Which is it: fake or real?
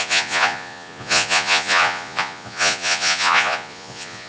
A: fake